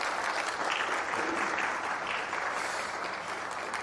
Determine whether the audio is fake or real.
real